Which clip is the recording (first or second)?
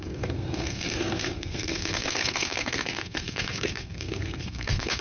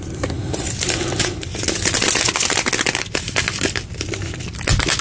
second